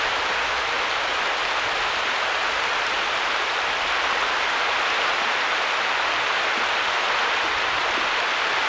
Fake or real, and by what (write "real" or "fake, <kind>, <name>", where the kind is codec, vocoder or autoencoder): real